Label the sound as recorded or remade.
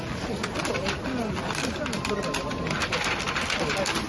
recorded